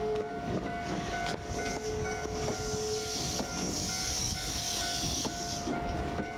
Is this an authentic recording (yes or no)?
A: no